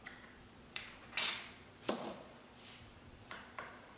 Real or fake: fake